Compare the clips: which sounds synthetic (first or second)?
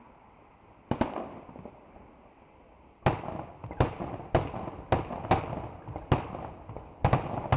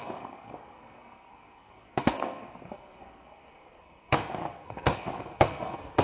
second